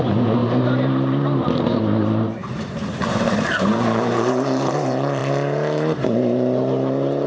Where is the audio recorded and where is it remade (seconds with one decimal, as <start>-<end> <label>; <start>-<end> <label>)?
0.0-7.3 remade